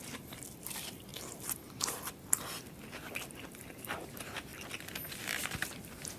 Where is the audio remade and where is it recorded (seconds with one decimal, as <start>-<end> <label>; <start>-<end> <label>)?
0.0-1.1 remade; 1.1-3.9 recorded; 3.9-4.5 remade; 4.5-5.4 recorded; 5.4-6.2 remade